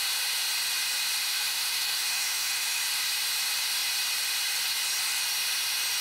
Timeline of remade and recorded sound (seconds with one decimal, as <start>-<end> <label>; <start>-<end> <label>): 0.0-1.2 recorded; 1.2-2.8 remade; 2.8-6.0 recorded